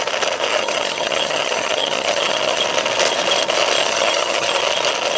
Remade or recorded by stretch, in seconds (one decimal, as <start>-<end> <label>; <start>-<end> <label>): 0.0-0.5 recorded; 0.5-2.6 remade; 2.6-3.8 recorded; 3.8-4.6 remade; 4.6-5.2 recorded

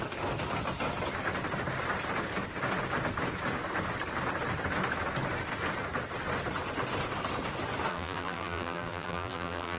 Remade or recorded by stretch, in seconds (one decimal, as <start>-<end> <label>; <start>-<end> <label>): 0.0-7.9 recorded; 7.9-9.8 remade

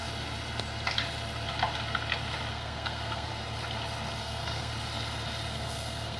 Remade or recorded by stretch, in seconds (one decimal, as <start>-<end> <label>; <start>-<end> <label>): 0.0-2.5 recorded; 2.5-3.3 remade; 3.3-4.2 recorded; 4.2-4.7 remade; 4.7-5.5 recorded; 5.5-6.2 remade

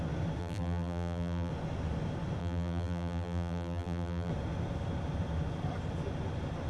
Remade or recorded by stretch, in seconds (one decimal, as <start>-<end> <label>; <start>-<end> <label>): 0.0-0.4 recorded; 0.4-1.5 remade; 1.5-2.4 recorded; 2.4-4.3 remade; 4.3-6.7 recorded